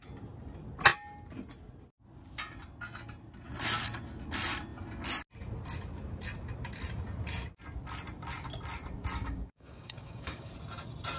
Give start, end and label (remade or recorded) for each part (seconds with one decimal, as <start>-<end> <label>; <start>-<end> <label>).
0.0-9.2 recorded; 9.2-10.5 remade; 10.5-11.2 recorded